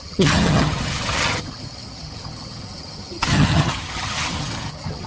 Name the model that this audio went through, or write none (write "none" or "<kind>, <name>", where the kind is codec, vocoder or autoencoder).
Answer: vocoder, HiFi-GAN